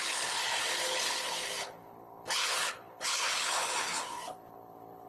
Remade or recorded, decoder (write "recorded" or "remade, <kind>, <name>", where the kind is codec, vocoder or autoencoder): remade, codec, HILCodec